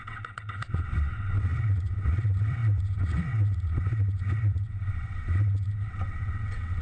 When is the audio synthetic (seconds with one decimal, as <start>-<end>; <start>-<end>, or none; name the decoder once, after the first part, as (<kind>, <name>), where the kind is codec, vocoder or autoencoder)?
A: 0.0-6.8 (vocoder, WaveNeXt)